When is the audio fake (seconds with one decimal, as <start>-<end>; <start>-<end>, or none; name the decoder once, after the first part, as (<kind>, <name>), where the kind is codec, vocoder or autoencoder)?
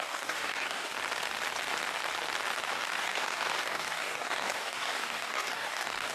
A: 0.0-0.9 (codec, DAC); 2.7-6.1